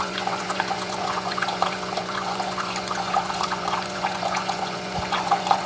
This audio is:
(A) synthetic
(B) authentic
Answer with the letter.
A